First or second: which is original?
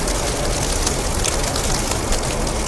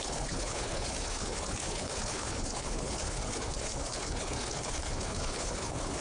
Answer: first